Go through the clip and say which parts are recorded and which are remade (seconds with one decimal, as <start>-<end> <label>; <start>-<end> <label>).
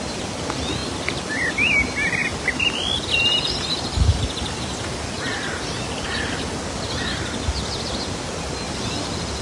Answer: 0.0-0.8 recorded; 0.8-1.5 remade; 1.5-2.2 recorded; 2.2-6.6 remade; 6.6-9.4 recorded